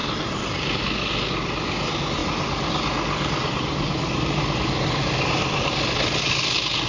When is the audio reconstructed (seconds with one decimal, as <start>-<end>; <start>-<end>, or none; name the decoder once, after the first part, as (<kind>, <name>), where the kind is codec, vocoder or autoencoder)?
none